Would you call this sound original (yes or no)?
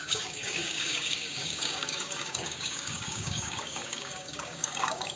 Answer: no